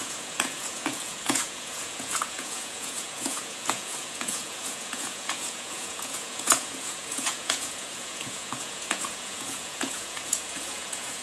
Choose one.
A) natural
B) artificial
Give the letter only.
B